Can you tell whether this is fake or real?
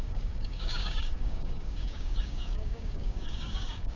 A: fake